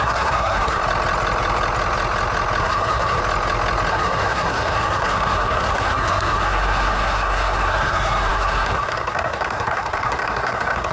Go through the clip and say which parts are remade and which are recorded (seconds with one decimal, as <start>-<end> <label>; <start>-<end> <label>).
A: 0.0-0.8 remade; 0.8-2.6 recorded; 2.6-3.2 remade; 3.2-3.9 recorded; 3.9-10.9 remade